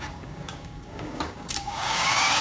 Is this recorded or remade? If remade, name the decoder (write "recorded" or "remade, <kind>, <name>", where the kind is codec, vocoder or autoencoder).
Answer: remade, codec, DAC